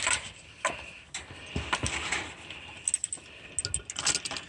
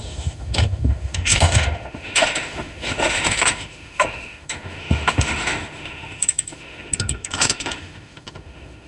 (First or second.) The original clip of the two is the first